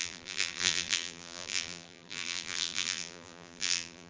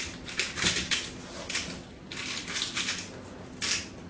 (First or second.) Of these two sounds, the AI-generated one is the first